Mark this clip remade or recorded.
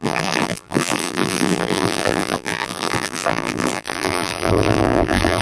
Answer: remade